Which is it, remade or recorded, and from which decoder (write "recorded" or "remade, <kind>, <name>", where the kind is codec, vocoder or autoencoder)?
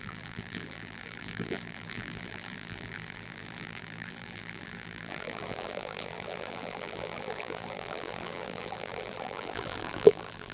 remade, vocoder, BigVGAN v2